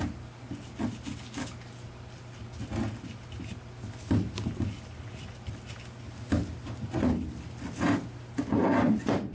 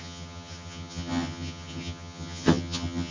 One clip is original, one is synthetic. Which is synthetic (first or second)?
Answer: second